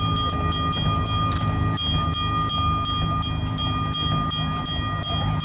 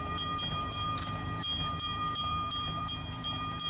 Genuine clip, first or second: first